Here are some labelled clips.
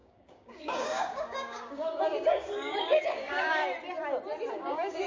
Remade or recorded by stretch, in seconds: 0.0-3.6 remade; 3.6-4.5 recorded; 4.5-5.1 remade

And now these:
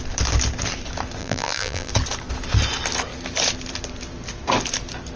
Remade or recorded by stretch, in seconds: 0.0-1.2 recorded; 1.2-1.9 remade; 1.9-5.2 recorded

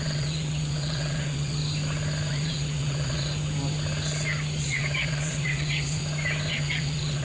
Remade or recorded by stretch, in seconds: 0.0-1.6 remade; 1.6-2.3 recorded; 2.3-3.3 remade; 3.3-4.6 recorded; 4.6-6.0 remade; 6.0-6.5 recorded; 6.5-7.2 remade

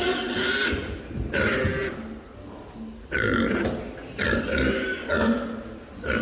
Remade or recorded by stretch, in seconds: 0.0-6.2 recorded

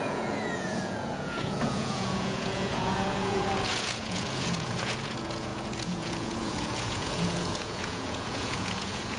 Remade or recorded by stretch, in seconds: 0.0-9.2 remade

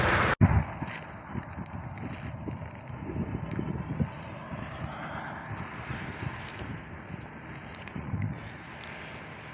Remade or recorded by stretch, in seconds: 0.0-7.7 recorded; 7.7-8.7 remade; 8.7-9.5 recorded

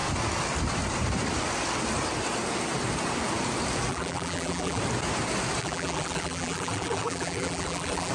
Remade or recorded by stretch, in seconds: 0.0-3.9 recorded; 3.9-4.8 remade; 4.8-5.6 recorded; 5.6-8.1 remade

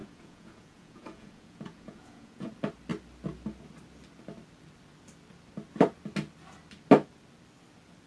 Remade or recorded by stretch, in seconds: 0.0-2.5 remade; 2.5-8.1 recorded